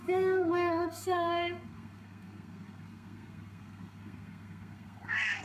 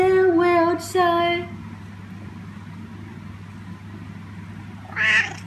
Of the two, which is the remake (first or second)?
first